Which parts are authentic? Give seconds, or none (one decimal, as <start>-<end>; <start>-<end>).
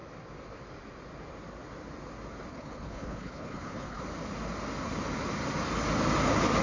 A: 0.0-2.5; 4.0-6.6